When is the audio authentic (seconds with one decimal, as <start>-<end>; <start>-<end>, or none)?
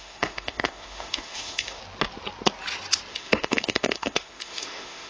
1.8-3.1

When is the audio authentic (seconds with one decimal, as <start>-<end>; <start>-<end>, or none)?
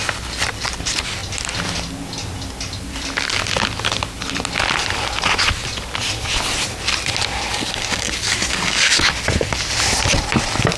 0.0-7.5; 9.1-10.8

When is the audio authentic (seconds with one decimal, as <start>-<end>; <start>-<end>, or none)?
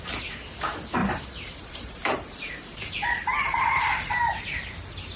0.0-1.0; 4.1-5.2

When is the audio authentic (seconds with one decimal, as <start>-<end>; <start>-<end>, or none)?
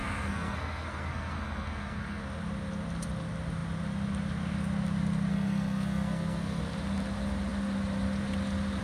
2.2-5.3; 6.6-8.8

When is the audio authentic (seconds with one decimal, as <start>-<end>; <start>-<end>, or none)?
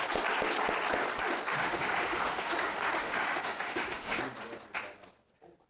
0.0-1.5; 4.2-5.7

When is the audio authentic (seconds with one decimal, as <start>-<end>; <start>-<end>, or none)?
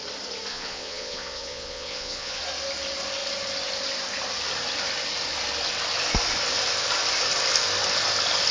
0.0-0.5; 2.4-8.5